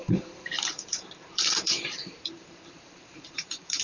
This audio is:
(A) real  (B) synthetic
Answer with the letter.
B